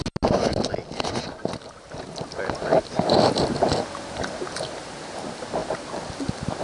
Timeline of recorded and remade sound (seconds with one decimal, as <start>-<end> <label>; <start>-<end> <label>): 0.0-6.6 recorded